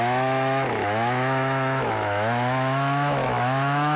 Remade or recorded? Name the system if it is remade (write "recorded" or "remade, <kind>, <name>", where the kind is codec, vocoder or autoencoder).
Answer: remade, autoencoder, DAC-VAE